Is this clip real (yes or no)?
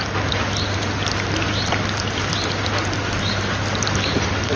no